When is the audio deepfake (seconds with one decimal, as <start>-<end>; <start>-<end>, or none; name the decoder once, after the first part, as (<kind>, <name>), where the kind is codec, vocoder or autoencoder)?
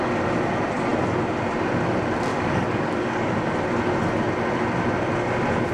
2.3-3.3 (codec, DAC)